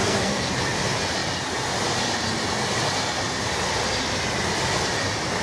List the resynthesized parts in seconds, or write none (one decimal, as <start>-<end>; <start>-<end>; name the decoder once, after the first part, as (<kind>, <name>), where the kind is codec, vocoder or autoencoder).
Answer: 0.0-0.5 (codec, SNAC)